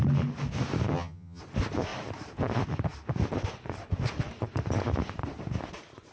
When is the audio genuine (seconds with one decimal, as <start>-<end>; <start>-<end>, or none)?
0.0-0.9; 1.4-6.1